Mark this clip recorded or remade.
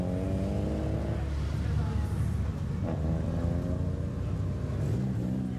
recorded